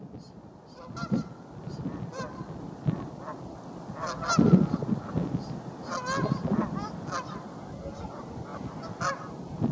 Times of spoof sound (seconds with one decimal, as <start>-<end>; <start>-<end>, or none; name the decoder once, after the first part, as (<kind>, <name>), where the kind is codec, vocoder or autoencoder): none